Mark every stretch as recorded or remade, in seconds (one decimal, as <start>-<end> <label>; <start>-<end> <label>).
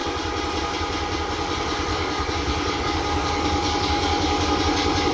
0.0-1.9 recorded; 1.9-4.6 remade; 4.6-5.1 recorded